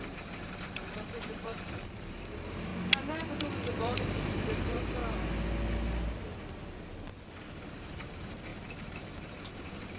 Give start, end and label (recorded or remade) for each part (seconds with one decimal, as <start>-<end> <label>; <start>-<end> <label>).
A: 0.0-2.7 remade; 2.7-3.4 recorded; 3.4-5.0 remade; 5.0-7.7 recorded; 7.7-10.0 remade